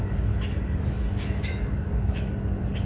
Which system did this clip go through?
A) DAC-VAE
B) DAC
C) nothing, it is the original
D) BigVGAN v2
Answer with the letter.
B